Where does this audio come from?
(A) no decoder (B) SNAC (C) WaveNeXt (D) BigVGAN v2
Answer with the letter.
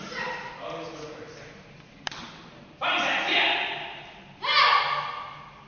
A